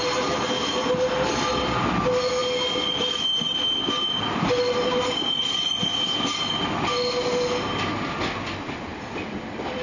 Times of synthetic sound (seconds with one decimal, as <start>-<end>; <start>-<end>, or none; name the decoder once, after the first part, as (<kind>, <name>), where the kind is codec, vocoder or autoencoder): none